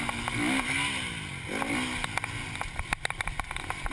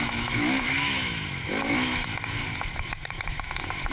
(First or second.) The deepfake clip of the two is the second